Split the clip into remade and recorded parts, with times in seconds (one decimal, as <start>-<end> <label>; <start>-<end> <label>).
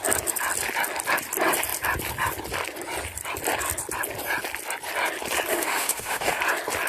0.0-5.5 recorded; 5.5-6.4 remade; 6.4-6.9 recorded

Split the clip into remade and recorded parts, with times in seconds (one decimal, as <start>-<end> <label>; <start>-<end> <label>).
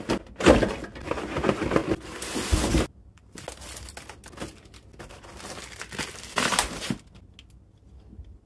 0.0-8.5 recorded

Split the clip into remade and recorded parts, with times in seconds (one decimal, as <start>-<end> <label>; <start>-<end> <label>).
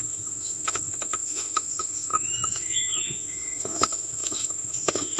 0.0-5.2 remade